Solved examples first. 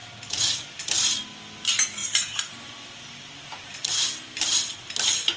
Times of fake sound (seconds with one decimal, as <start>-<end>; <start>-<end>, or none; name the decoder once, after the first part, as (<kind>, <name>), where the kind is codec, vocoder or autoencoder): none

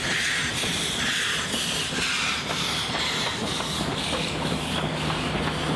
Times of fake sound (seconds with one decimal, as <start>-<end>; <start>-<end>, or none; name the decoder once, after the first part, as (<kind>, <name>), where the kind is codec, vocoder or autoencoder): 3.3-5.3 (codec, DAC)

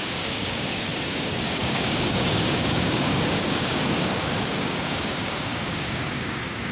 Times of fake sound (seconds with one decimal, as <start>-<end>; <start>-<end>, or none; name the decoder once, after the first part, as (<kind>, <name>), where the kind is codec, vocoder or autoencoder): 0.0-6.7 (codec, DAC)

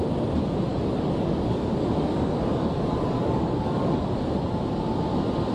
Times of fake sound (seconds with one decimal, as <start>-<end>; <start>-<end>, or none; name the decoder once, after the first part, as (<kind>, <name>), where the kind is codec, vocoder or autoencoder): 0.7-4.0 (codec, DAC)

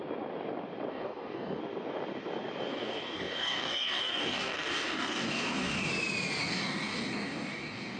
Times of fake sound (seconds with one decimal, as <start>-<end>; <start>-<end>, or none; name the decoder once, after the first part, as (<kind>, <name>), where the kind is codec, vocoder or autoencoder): 0.9-1.6 (codec, DAC); 2.7-5.9; 6.4-8.0

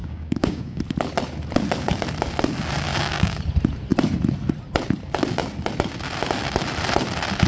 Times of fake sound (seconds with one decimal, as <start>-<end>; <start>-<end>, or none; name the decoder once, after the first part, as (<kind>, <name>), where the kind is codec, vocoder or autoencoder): 0.0-0.8 (codec, DAC); 2.9-3.4

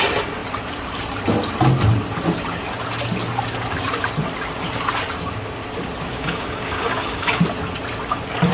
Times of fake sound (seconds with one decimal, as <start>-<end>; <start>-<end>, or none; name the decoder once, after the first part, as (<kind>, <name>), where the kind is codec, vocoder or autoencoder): 6.1-7.4 (codec, DAC)

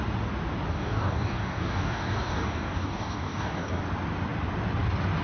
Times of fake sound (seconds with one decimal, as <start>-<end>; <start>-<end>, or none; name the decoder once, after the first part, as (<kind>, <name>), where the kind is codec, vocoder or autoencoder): 0.7-3.8 (codec, DAC)